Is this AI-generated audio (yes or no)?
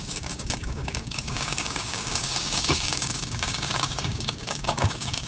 yes